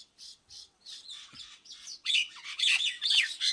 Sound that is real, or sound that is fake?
fake